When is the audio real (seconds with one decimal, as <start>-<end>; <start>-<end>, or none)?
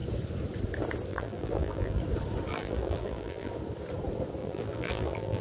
0.0-1.1; 2.0-2.5; 3.5-4.4